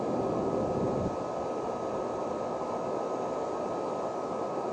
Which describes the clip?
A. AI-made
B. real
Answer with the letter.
B